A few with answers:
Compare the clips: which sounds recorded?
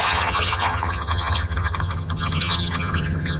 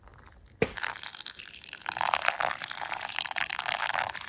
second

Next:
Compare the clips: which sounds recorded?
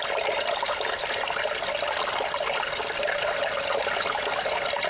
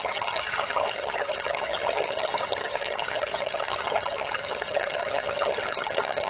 first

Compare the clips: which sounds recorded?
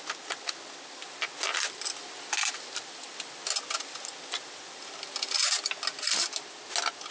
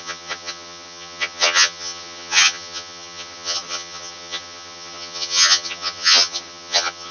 first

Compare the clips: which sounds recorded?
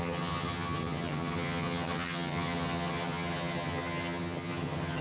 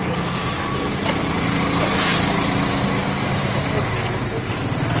second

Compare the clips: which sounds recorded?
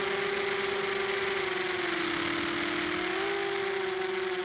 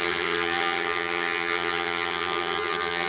first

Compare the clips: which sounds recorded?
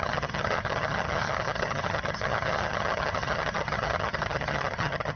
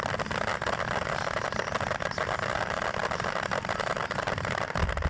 second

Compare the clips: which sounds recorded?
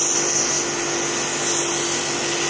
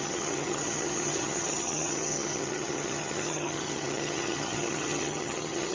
first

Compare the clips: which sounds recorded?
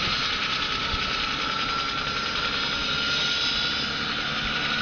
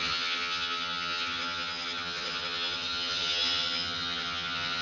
first